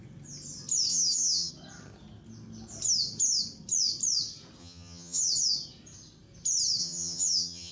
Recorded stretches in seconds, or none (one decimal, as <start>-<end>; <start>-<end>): 0.0-0.9; 1.5-4.6; 5.3-6.8